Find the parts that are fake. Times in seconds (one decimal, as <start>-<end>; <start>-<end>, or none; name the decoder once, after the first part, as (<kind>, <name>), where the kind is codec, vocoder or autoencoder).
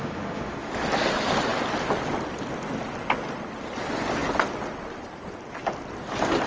0.0-0.7 (autoencoder, DAC-VAE)